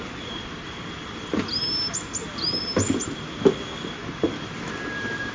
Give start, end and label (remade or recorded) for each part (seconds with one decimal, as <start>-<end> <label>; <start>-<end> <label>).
0.0-5.3 recorded